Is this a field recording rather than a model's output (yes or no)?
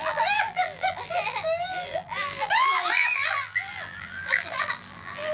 no